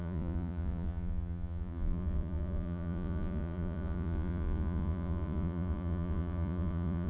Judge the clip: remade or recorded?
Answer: remade